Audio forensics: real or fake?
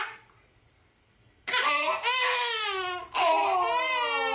real